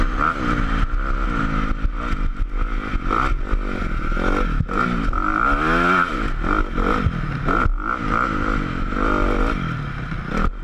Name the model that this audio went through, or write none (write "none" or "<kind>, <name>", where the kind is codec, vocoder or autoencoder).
none